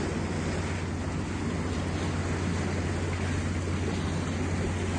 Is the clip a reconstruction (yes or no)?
no